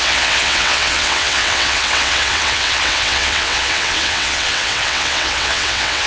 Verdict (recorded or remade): remade